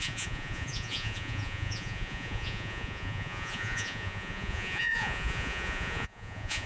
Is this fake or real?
fake